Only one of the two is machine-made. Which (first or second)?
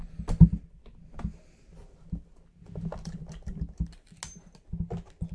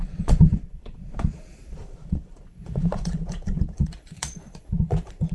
second